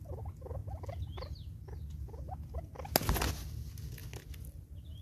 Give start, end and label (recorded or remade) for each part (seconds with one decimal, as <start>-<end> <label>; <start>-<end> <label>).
0.0-4.0 recorded; 4.0-5.0 remade